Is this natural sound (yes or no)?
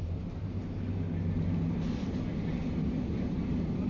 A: yes